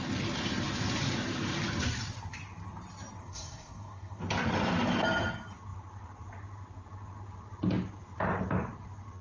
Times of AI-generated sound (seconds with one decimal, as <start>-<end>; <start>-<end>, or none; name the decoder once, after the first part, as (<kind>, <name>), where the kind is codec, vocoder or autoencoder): 3.2-4.2 (codec, SNAC)